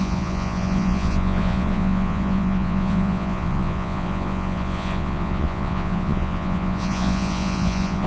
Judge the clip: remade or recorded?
remade